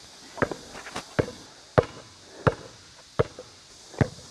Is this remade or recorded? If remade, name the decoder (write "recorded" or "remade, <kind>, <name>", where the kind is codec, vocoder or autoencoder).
recorded